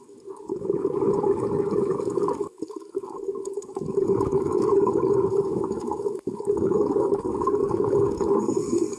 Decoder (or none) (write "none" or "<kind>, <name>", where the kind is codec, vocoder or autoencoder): codec, DAC